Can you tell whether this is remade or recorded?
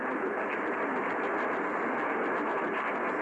recorded